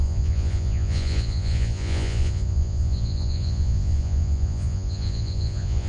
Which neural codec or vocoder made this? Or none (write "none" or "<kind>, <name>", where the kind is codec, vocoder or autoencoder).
vocoder, Vocos